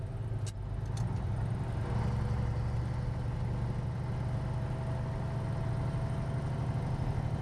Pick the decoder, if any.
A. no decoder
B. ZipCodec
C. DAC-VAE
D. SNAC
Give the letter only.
A